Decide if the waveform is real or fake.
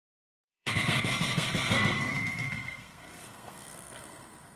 fake